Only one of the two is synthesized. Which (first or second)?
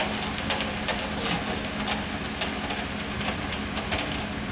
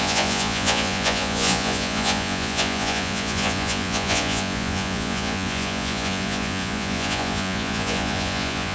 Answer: second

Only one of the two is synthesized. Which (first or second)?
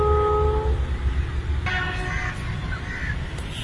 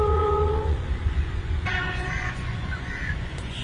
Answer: second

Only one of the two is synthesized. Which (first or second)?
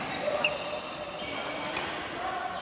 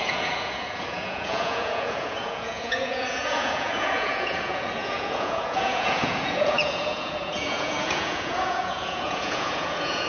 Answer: second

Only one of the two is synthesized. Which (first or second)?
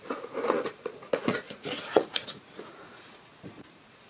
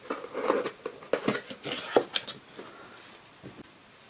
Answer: first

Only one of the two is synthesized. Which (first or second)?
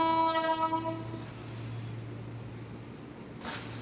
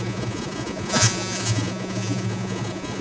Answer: second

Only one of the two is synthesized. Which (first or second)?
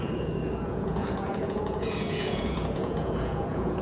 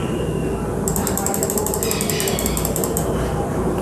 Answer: first